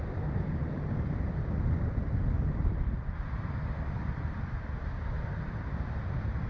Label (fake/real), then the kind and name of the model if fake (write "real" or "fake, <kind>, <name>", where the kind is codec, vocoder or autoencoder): fake, vocoder, BigVGAN v2